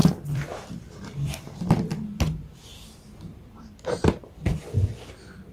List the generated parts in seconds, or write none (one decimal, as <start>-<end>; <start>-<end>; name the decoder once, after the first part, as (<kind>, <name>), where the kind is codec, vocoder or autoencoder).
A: 0.0-2.2 (vocoder, BigVGAN v2)